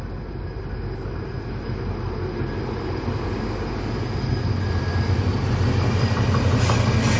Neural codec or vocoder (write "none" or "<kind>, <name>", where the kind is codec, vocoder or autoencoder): none